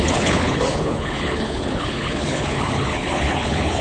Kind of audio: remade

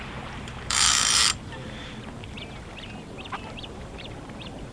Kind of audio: remade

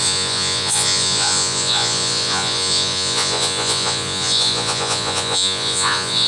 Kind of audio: remade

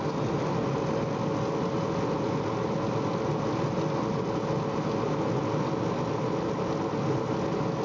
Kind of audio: recorded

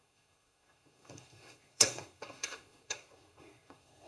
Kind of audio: remade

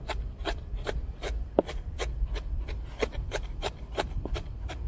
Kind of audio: recorded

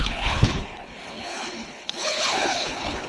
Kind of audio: remade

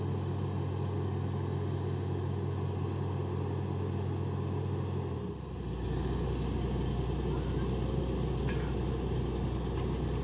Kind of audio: recorded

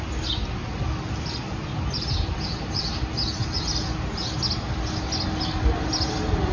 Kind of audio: recorded